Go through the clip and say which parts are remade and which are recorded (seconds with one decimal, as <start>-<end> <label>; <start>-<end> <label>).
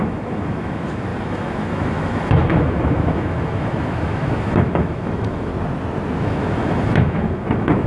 0.0-5.5 remade; 5.5-6.2 recorded; 6.2-7.9 remade